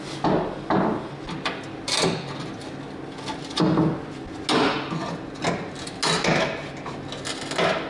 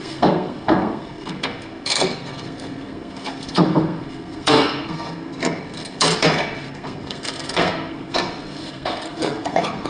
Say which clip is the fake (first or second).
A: second